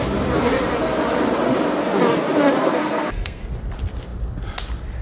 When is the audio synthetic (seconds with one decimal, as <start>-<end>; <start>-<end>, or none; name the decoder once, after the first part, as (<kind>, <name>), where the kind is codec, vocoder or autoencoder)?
2.6-3.4 (codec, SNAC)